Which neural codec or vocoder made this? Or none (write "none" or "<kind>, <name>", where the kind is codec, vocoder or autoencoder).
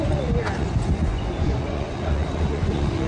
vocoder, Vocos